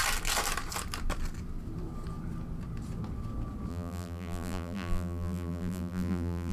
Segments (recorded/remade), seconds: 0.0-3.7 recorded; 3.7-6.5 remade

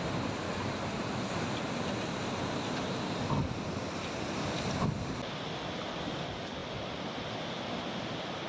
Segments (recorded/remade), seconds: 0.0-8.5 recorded

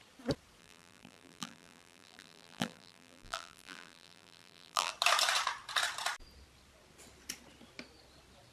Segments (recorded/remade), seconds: 0.0-0.6 recorded; 0.6-4.9 remade; 4.9-8.5 recorded

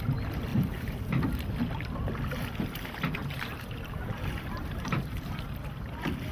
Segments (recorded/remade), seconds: 0.0-0.5 recorded; 0.5-1.4 remade; 1.4-3.2 recorded; 3.2-5.6 remade; 5.6-6.3 recorded

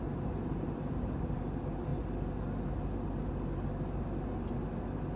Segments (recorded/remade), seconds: 0.0-1.9 remade; 1.9-5.2 recorded

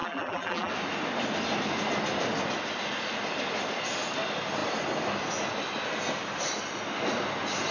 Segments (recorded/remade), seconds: 0.0-0.7 remade; 0.7-7.7 recorded

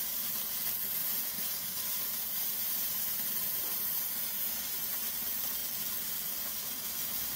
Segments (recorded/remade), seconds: 0.0-1.0 recorded; 1.0-5.1 remade; 5.1-7.4 recorded

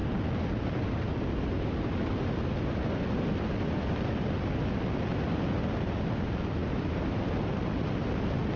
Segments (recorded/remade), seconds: 0.0-6.6 recorded; 6.6-7.2 remade; 7.2-8.6 recorded